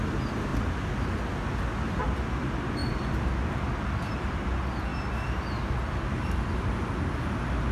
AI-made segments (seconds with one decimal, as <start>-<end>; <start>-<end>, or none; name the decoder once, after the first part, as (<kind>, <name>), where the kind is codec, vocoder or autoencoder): none